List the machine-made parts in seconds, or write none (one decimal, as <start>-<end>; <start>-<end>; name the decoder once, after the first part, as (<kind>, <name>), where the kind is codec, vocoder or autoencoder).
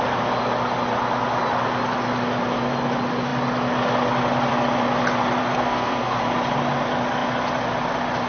5.4-6.2 (codec, SNAC)